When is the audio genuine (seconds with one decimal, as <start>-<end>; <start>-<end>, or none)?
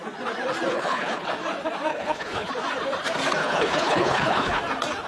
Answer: 0.0-0.7; 1.3-1.9; 2.5-3.4; 4.6-5.1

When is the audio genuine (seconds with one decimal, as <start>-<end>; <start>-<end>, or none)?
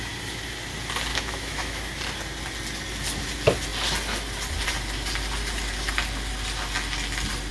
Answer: 0.0-1.1; 1.8-7.5